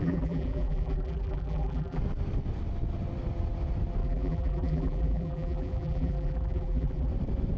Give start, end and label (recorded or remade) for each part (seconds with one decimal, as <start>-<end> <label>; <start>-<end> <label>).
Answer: 0.0-2.0 remade; 2.0-4.0 recorded; 4.0-7.1 remade; 7.1-7.6 recorded